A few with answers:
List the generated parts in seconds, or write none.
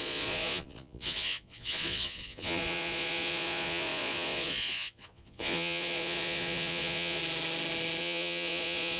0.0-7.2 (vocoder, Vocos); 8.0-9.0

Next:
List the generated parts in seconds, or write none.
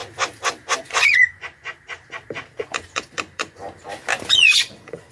0.8-1.7 (vocoder, Vocos); 2.6-3.6; 4.3-5.1